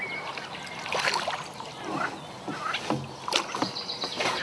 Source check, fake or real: real